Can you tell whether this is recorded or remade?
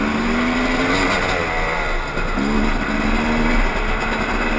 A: recorded